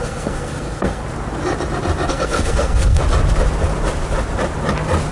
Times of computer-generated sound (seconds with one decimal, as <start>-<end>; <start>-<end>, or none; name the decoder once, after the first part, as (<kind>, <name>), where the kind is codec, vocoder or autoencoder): 0.0-1.0 (codec, SNAC); 2.1-3.0